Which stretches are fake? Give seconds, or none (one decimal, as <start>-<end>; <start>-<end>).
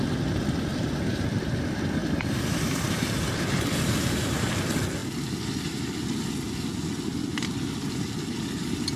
0.7-1.4; 2.0-4.6